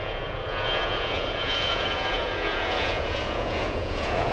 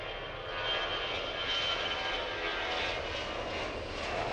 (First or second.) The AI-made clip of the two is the first